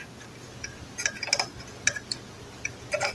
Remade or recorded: recorded